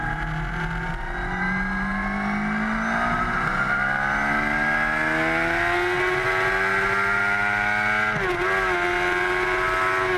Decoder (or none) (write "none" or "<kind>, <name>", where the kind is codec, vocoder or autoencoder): none